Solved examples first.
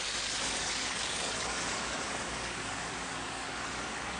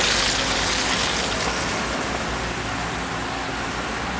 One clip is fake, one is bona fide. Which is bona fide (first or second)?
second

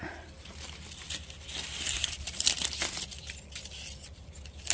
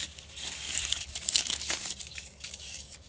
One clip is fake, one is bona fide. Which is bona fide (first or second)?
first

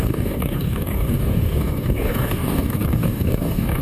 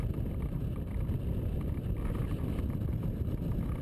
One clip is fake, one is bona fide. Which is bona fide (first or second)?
second